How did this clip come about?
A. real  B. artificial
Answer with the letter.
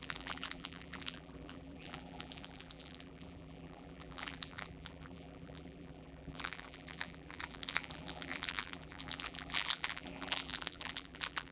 B